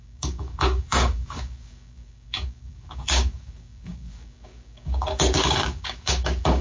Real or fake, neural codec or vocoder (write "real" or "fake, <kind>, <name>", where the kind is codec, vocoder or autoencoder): fake, codec, DAC